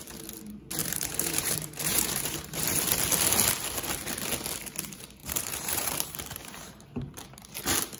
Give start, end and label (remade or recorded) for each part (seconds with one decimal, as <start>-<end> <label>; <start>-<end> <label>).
0.0-0.8 recorded; 0.8-2.8 remade; 2.8-5.2 recorded; 5.2-7.2 remade; 7.2-8.0 recorded